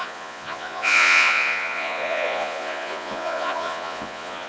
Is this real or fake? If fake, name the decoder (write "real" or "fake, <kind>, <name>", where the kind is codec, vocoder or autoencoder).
fake, vocoder, Vocos